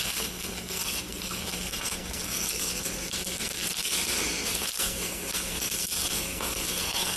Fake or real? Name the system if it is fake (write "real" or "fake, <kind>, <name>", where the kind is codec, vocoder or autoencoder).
fake, codec, SNAC